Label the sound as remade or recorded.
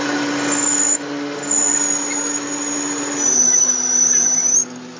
recorded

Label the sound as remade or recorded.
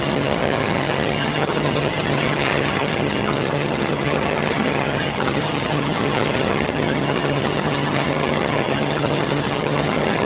remade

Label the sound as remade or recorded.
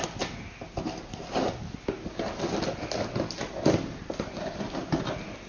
recorded